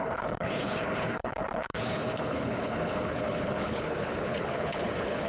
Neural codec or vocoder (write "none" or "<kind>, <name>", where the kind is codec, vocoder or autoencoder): codec, HILCodec